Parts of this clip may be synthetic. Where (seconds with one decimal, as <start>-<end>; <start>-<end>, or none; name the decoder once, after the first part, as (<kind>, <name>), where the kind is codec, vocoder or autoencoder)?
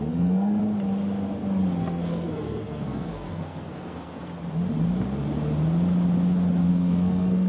0.0-0.6 (codec, SNAC); 1.8-4.3; 6.7-7.5